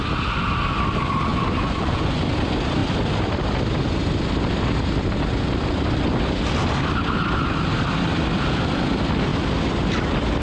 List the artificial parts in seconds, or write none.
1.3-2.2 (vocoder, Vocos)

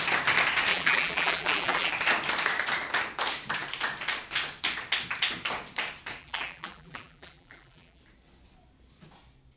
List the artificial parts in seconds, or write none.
0.7-1.9 (vocoder, BigVGAN v2); 6.2-8.0

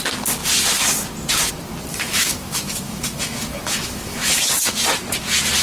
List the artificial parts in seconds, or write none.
1.9-4.5 (autoencoder, DAC-VAE)

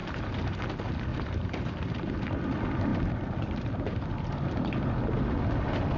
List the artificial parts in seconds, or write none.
0.0-0.6 (vocoder, BigVGAN v2); 1.1-2.1

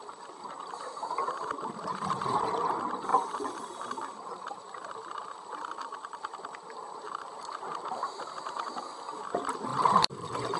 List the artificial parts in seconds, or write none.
1.9-2.4 (vocoder, BigVGAN v2); 3.1-8.3; 9.7-10.6